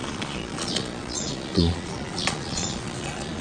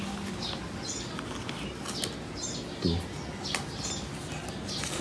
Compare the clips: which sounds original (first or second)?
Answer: second